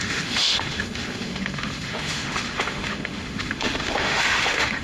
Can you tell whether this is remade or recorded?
remade